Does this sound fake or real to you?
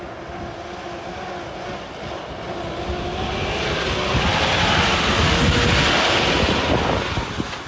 real